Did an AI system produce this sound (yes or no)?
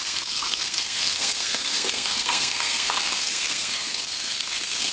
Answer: yes